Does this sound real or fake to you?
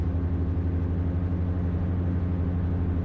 real